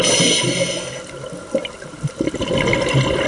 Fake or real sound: real